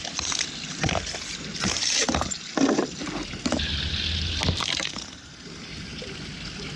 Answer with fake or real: real